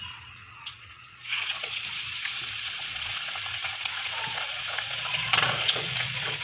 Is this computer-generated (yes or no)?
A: yes